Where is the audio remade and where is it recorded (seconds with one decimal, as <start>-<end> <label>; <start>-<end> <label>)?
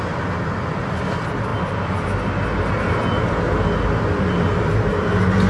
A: 0.0-5.5 recorded